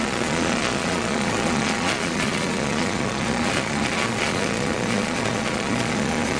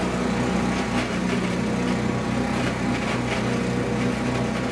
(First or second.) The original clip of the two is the second